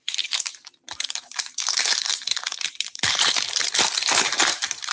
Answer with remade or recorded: remade